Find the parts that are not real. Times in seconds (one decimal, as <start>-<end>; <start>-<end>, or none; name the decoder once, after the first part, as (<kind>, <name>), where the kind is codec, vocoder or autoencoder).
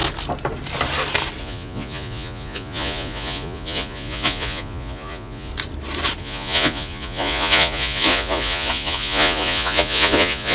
1.4-5.5 (vocoder, Vocos); 6.2-10.5